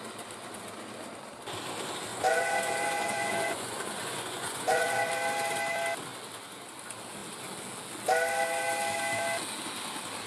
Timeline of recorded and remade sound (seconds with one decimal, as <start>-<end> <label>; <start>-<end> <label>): 0.0-2.1 recorded; 2.1-5.1 remade; 5.1-10.3 recorded

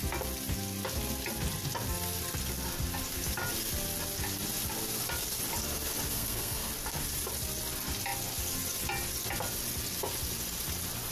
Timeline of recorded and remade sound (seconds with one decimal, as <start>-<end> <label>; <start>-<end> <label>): 0.0-6.1 recorded; 6.1-6.7 remade; 6.7-11.1 recorded

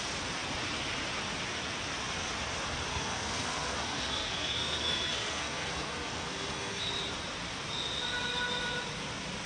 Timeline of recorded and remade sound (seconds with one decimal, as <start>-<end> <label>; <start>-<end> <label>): 0.0-2.9 recorded; 2.9-6.9 remade; 6.9-9.5 recorded

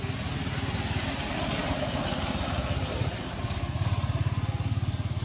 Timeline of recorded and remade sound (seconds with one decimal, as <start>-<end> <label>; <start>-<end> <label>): 0.0-5.2 recorded